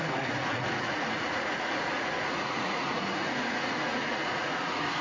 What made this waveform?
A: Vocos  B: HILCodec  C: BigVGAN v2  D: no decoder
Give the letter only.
A